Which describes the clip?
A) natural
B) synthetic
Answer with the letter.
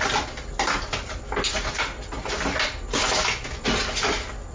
A